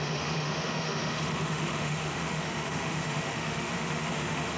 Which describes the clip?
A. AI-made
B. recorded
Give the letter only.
A